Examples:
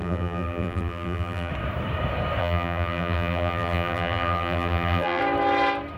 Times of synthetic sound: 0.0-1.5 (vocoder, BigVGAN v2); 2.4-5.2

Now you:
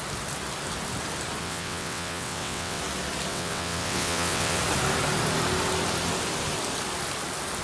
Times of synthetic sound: 1.4-2.8 (vocoder, WaveNeXt); 3.3-4.6

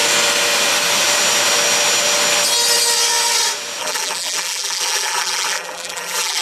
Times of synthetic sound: 3.8-6.4 (vocoder, BigVGAN v2)